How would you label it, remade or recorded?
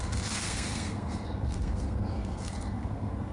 remade